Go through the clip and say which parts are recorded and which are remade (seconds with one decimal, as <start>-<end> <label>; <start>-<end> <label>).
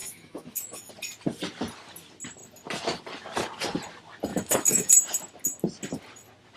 0.0-0.9 remade; 0.9-4.3 recorded; 4.3-4.9 remade; 4.9-6.6 recorded